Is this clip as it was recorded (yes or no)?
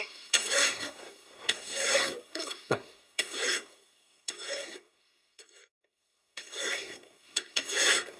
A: no